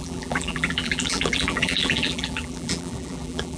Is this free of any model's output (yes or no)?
no